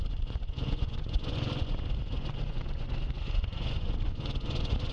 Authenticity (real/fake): fake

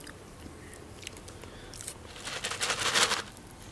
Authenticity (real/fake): real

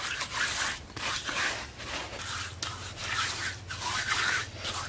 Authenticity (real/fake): real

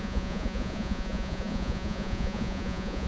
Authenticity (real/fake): fake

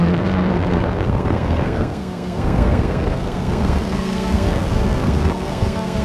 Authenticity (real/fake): fake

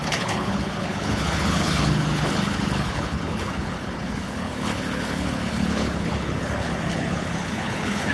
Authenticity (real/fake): fake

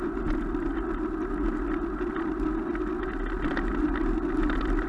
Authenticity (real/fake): real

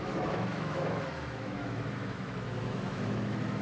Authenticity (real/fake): fake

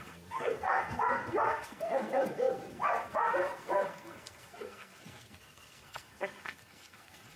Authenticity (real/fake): fake